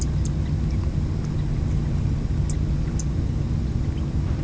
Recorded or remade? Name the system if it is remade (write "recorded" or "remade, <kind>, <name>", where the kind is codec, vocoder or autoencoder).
recorded